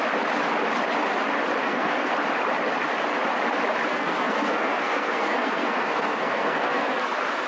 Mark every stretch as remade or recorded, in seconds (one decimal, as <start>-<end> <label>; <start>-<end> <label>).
0.0-1.6 recorded; 1.6-2.1 remade; 2.1-3.9 recorded; 3.9-7.1 remade; 7.1-7.5 recorded